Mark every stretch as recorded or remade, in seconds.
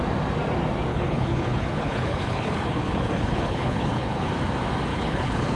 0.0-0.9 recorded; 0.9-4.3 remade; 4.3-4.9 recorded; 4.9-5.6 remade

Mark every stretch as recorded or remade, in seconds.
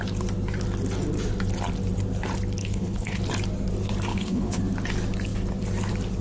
0.0-2.6 recorded; 2.6-3.2 remade; 3.2-4.1 recorded; 4.1-4.6 remade; 4.6-6.2 recorded